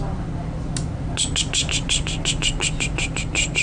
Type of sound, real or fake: real